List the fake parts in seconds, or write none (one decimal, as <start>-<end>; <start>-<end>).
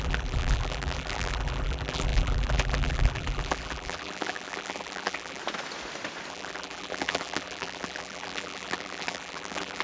0.0-5.4; 6.3-9.8